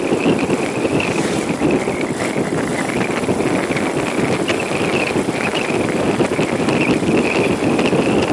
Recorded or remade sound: recorded